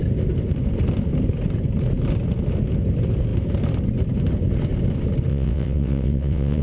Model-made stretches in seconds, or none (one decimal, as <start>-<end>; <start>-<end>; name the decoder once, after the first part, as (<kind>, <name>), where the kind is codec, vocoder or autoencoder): 5.3-6.6 (vocoder, WaveNeXt)